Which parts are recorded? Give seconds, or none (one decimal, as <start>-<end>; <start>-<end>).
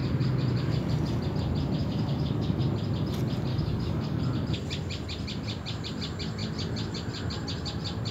0.0-1.8; 2.6-3.5; 4.2-8.1